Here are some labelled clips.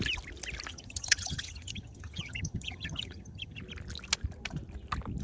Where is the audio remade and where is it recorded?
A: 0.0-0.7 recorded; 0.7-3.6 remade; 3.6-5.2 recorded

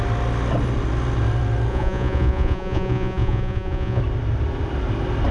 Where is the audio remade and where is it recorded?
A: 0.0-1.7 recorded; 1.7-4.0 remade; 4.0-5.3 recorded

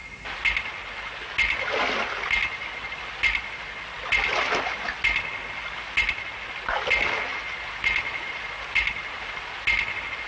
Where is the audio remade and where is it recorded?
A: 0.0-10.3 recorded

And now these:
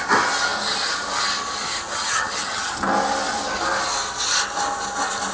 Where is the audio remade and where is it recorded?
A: 0.0-1.9 recorded; 1.9-2.7 remade; 2.7-5.3 recorded